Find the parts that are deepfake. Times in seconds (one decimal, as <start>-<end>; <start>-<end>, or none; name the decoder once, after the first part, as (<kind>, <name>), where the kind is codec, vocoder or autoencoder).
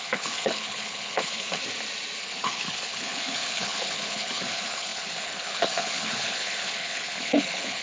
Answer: 0.0-1.6 (codec, HILCodec); 2.2-7.8